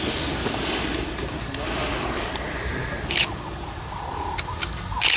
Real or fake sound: real